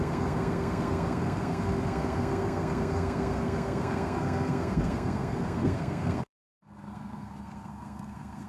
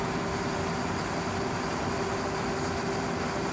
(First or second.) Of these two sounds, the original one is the second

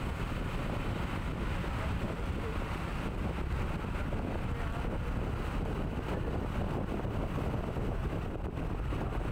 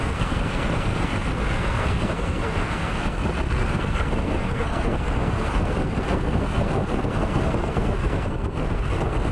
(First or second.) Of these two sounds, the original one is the first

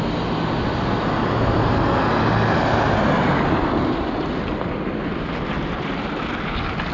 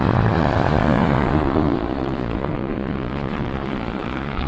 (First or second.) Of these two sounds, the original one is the first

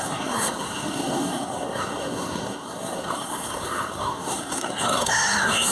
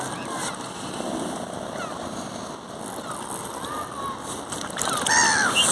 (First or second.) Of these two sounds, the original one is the second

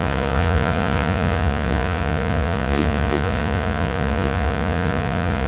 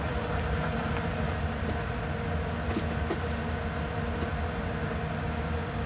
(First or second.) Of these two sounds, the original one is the second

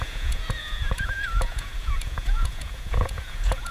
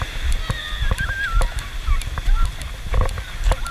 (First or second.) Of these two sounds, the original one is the second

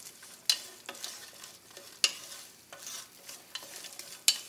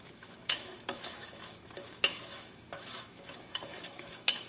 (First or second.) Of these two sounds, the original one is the first